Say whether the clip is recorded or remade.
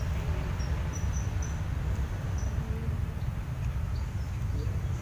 recorded